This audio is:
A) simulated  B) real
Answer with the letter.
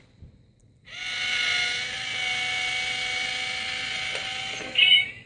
B